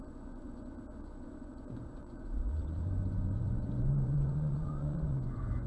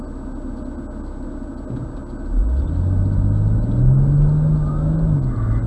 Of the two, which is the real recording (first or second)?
second